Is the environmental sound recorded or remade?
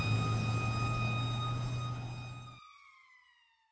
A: recorded